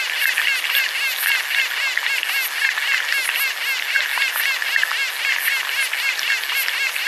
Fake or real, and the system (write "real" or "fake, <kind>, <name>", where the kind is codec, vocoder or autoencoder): real